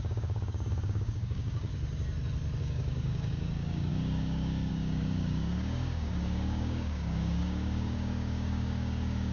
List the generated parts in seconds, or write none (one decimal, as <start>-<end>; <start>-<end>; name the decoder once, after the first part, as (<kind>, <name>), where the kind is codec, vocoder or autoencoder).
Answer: 0.0-1.7 (codec, DAC); 2.6-9.3